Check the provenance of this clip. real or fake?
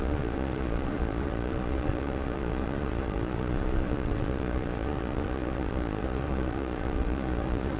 fake